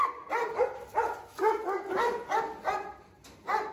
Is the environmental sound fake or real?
real